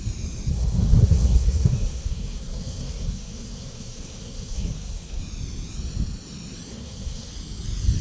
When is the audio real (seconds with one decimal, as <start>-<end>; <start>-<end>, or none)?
0.0-0.5; 5.2-6.7; 7.3-8.0